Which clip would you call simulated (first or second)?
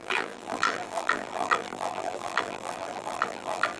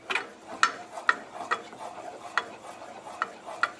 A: first